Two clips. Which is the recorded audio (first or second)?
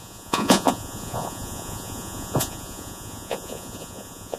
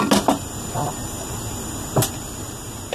second